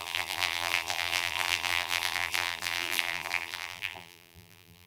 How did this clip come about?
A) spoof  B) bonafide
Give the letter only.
A